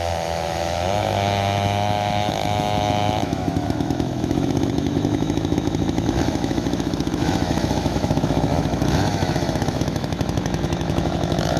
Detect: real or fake fake